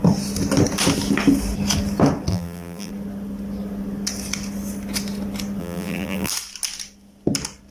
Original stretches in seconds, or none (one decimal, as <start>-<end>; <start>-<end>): 0.0-2.3; 2.9-5.6; 6.3-7.7